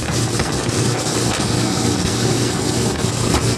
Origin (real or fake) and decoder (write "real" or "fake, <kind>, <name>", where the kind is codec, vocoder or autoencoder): fake, codec, SNAC